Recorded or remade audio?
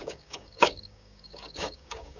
remade